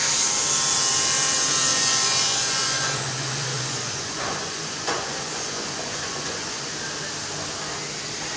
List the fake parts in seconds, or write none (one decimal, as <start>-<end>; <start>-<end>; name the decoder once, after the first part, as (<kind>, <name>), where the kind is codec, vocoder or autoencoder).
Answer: 1.7-6.7 (vocoder, Vocos)